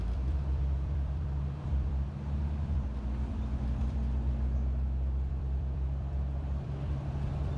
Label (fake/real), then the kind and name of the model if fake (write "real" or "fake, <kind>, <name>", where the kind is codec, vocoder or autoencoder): fake, vocoder, BigVGAN v2